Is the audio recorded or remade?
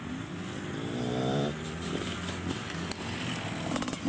recorded